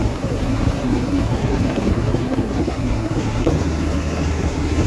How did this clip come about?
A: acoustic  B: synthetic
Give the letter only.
B